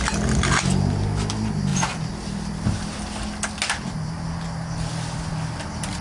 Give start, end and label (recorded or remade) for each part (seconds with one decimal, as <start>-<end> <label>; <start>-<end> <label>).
0.0-6.0 recorded